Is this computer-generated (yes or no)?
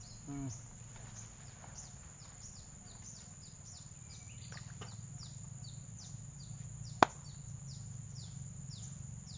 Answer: no